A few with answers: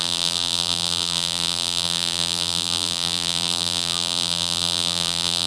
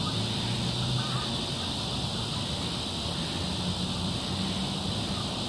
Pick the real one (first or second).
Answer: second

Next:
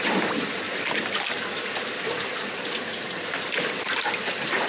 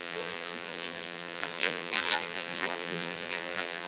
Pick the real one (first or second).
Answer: first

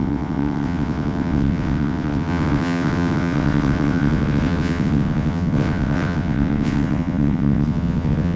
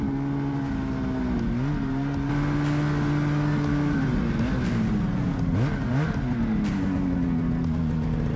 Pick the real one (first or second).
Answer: second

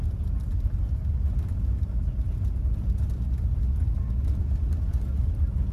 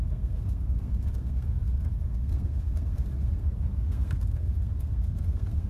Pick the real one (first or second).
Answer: first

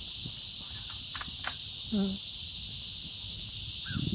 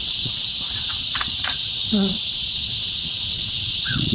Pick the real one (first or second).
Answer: first